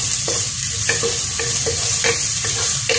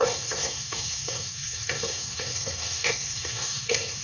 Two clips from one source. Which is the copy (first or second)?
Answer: second